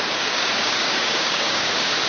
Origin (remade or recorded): remade